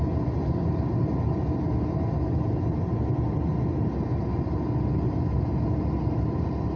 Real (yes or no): yes